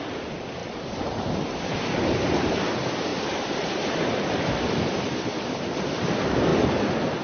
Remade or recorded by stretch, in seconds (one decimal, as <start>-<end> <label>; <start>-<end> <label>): 0.0-0.6 recorded; 0.6-2.5 remade; 2.5-3.1 recorded; 3.1-6.1 remade; 6.1-7.2 recorded